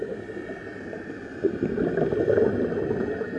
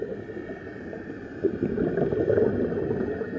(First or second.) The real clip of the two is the first